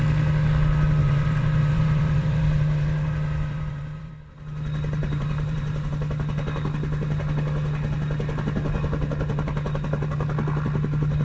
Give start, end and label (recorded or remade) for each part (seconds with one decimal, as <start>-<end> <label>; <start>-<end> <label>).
0.0-1.0 recorded; 1.0-4.1 remade; 4.1-5.0 recorded; 5.0-5.9 remade; 5.9-11.2 recorded